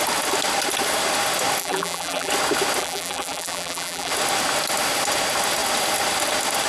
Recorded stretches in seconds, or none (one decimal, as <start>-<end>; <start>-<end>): 0.0-1.6; 2.3-2.8; 4.1-6.7